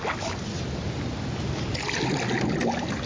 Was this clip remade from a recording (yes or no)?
no